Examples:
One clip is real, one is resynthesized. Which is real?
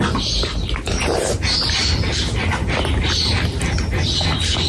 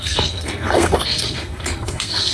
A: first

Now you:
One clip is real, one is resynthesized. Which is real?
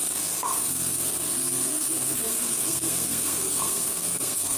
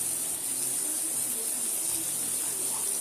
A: second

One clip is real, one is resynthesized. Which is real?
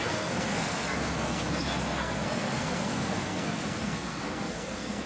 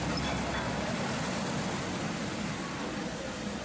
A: second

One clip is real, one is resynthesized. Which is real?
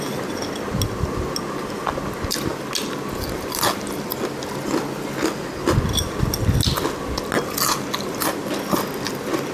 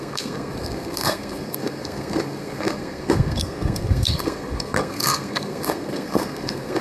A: first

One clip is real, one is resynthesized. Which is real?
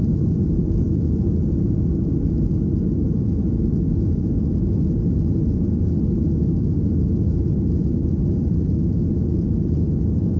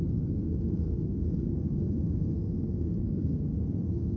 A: first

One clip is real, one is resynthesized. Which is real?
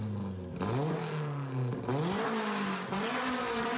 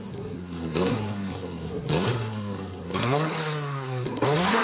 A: first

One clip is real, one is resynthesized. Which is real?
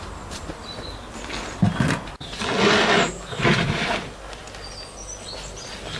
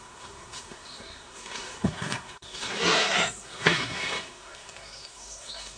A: first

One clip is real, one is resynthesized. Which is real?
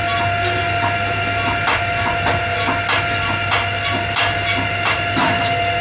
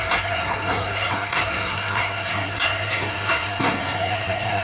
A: first